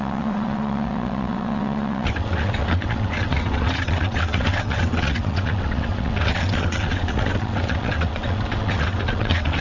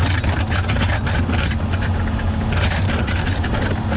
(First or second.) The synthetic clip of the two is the first